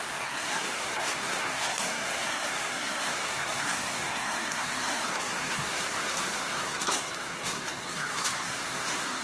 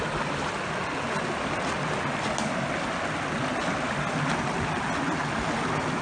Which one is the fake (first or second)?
first